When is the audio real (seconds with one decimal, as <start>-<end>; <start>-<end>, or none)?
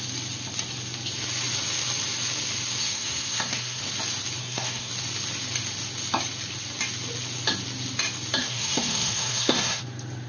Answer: 0.0-2.8; 3.8-4.4; 4.9-8.4; 9.8-10.3